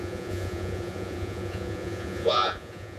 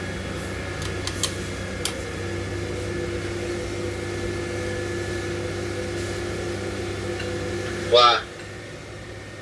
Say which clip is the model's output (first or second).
first